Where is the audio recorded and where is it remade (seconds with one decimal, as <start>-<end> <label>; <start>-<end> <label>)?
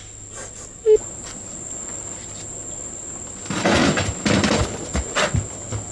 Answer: 0.0-5.9 recorded